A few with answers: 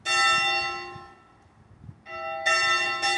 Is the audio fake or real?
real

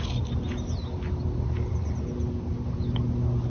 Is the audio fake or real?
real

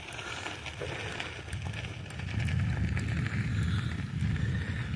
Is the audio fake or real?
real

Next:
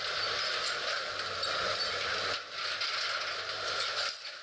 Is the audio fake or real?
real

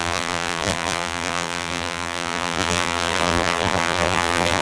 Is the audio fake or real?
fake